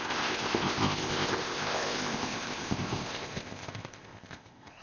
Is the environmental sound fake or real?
fake